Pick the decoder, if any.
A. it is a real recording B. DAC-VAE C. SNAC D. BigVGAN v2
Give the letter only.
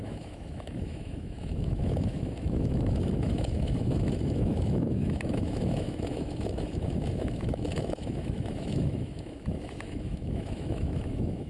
B